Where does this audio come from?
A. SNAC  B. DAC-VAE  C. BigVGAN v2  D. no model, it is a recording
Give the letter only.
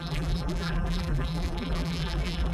C